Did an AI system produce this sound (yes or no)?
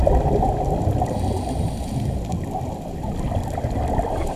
no